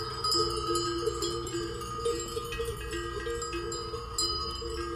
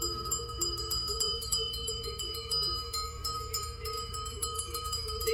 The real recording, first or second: first